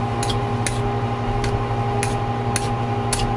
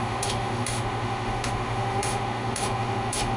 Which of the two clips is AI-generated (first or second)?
second